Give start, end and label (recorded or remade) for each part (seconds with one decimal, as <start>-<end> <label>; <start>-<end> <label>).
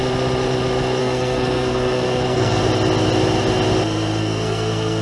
0.0-1.0 recorded; 1.0-2.6 remade; 2.6-4.2 recorded; 4.2-5.0 remade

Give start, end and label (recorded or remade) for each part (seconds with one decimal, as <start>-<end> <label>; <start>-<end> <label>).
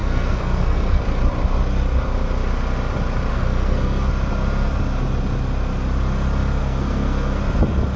0.0-1.0 remade; 1.0-3.3 recorded; 3.3-4.1 remade; 4.1-6.6 recorded; 6.6-7.4 remade; 7.4-8.0 recorded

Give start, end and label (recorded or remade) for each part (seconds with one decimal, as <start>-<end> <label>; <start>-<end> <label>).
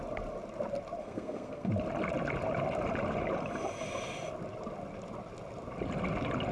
0.0-1.0 recorded; 1.0-1.7 remade; 1.7-6.5 recorded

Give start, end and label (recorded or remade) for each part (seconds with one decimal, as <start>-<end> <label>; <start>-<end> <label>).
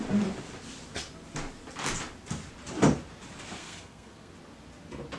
0.0-3.6 recorded; 3.6-4.3 remade; 4.3-5.2 recorded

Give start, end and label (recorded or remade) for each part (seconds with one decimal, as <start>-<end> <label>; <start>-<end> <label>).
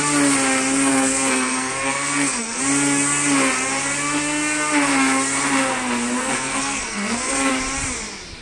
0.0-0.9 recorded; 0.9-2.6 remade; 2.6-6.2 recorded; 6.2-7.5 remade; 7.5-8.4 recorded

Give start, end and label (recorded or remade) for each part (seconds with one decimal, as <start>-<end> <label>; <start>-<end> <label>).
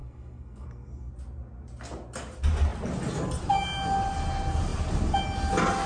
0.0-1.1 remade; 1.1-5.9 recorded